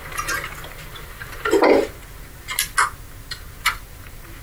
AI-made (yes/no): no